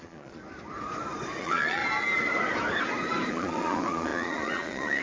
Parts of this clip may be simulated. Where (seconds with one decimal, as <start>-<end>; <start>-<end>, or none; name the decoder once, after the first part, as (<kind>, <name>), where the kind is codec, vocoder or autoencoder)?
0.0-0.4 (vocoder, Vocos); 1.4-1.8; 3.3-5.0